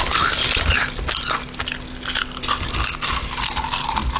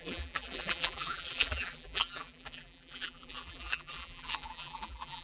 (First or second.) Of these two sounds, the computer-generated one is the second